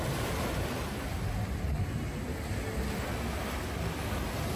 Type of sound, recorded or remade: recorded